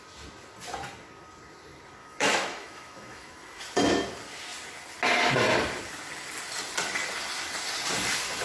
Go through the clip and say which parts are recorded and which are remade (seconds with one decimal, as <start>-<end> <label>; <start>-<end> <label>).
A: 0.0-2.0 recorded; 2.0-3.6 remade; 3.6-8.4 recorded